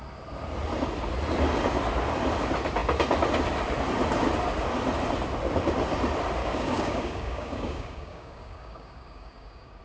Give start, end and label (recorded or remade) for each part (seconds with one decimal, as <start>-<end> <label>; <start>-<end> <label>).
0.0-6.4 recorded; 6.4-9.8 remade